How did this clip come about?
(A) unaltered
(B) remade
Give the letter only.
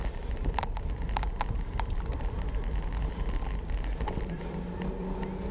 A